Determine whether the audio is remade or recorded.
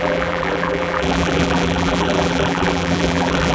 remade